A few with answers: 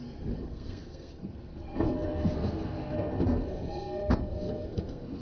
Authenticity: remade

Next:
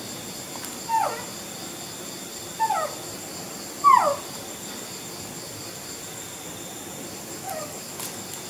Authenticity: recorded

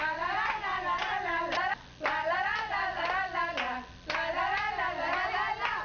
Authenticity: recorded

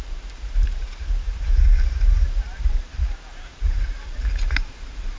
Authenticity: remade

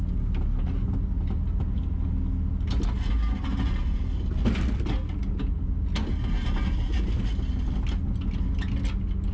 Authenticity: recorded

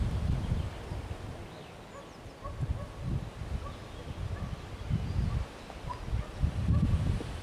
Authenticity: recorded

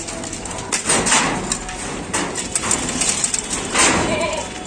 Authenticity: recorded